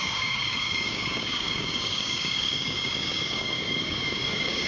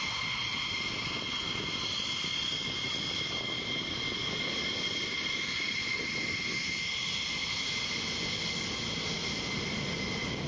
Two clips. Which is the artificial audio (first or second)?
first